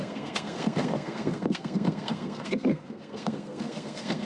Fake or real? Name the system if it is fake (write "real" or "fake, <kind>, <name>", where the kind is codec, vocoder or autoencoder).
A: fake, codec, SNAC